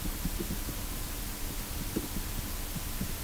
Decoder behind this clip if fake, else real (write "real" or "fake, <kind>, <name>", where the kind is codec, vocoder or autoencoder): fake, vocoder, BigVGAN v2